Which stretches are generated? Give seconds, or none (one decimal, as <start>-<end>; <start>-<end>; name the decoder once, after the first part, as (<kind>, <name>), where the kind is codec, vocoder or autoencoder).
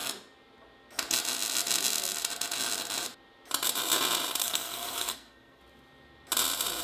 4.4-5.6 (codec, SNAC)